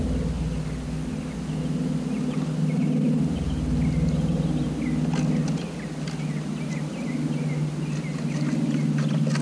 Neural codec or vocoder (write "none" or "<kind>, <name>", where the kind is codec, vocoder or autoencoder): none